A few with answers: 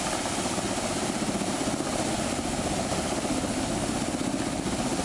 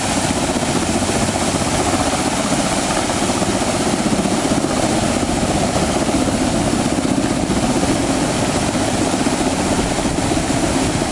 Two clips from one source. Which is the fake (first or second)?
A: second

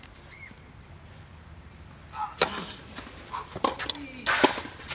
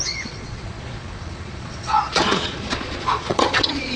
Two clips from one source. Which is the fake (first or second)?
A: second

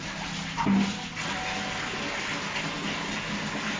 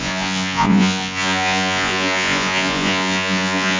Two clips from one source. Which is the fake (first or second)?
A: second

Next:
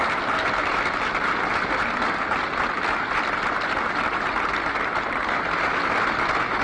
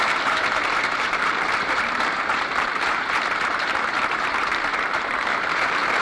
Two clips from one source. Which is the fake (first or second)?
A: second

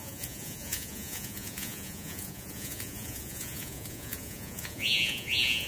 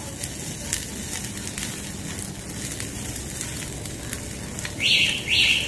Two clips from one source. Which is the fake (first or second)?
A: first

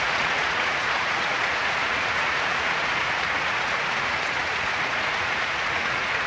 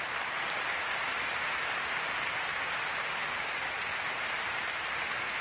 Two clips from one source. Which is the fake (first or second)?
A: first